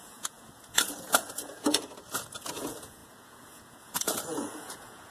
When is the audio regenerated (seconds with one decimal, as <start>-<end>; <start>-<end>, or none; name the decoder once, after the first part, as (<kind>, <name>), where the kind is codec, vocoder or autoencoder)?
0.0-5.1 (vocoder, Vocos)